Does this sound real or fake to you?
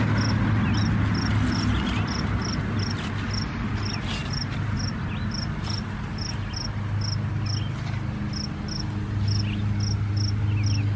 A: real